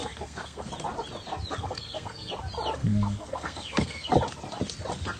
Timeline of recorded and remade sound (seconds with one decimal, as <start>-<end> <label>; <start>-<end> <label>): 0.0-0.7 remade; 0.7-1.6 recorded; 1.6-2.3 remade; 2.3-2.8 recorded; 2.8-4.1 remade; 4.1-5.2 recorded